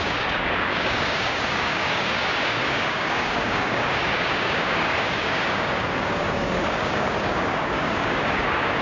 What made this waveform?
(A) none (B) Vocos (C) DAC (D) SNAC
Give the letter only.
C